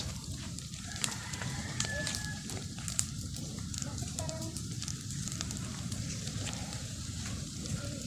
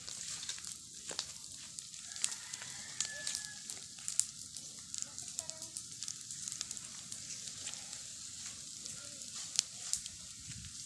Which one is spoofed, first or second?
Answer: first